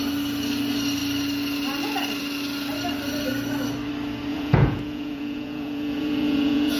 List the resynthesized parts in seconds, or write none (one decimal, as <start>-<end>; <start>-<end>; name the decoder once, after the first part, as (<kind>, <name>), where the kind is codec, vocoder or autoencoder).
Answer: 4.3-6.8 (vocoder, Vocos)